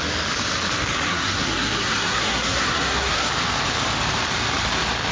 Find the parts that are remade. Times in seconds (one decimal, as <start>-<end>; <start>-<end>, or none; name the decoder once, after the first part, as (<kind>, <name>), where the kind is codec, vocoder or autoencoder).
1.1-3.3 (codec, SNAC)